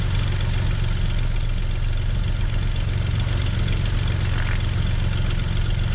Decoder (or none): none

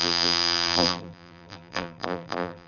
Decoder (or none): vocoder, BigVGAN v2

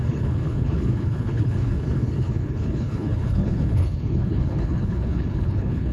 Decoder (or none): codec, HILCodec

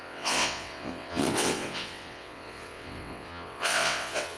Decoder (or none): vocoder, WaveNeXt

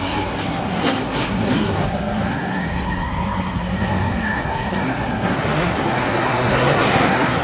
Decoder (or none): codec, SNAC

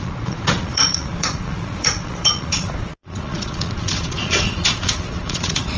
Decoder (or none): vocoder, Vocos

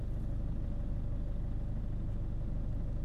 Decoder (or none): none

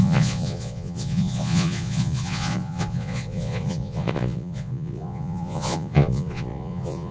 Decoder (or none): vocoder, Vocos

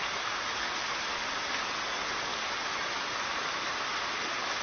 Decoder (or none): none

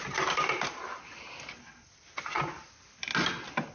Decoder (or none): none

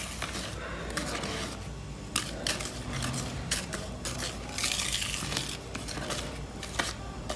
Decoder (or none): none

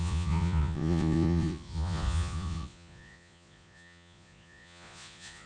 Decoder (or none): vocoder, Vocos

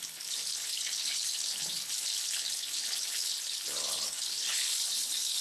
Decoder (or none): codec, HILCodec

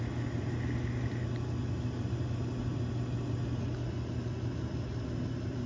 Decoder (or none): none